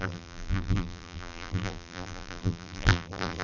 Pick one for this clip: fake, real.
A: fake